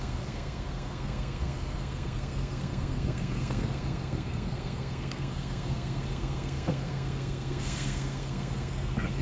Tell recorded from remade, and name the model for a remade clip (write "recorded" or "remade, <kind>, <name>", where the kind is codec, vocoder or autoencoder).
remade, codec, SNAC